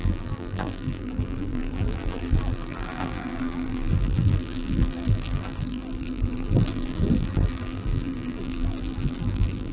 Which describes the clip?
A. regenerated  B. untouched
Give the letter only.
A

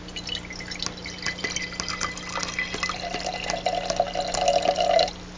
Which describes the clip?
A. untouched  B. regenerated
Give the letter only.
A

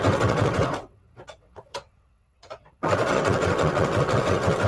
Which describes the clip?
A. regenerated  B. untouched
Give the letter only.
A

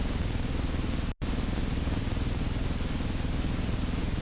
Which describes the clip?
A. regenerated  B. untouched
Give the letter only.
B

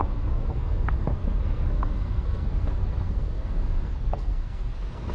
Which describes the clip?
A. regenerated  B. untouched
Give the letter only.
A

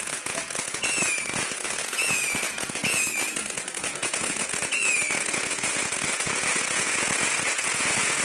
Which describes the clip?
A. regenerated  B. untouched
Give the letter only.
A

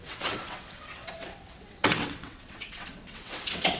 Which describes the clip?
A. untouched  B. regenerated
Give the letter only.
B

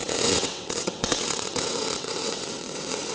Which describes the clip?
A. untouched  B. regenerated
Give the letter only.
B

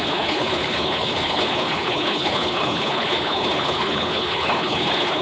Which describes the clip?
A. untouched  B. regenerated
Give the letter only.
B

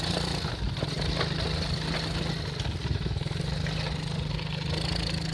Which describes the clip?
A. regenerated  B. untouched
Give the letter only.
B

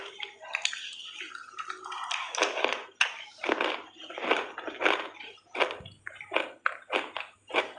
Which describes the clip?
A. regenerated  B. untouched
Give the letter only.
B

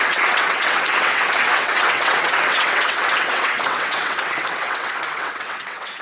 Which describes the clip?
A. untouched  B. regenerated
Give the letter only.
B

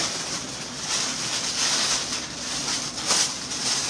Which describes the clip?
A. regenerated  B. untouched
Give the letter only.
B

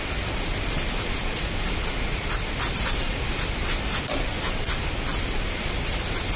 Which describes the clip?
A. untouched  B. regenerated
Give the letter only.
A